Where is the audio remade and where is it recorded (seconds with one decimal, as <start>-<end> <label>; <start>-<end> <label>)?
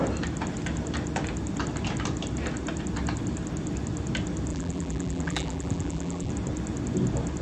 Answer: 0.0-4.5 recorded; 4.5-6.3 remade; 6.3-7.4 recorded